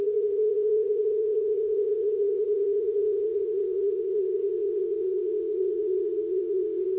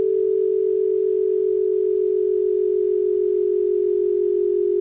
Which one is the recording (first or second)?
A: second